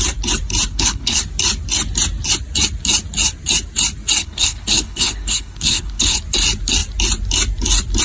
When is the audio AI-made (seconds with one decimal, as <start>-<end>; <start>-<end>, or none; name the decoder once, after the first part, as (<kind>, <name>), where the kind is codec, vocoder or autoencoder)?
0.7-1.2 (codec, HILCodec); 4.2-6.2